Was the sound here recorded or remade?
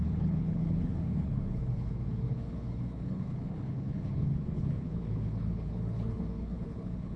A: remade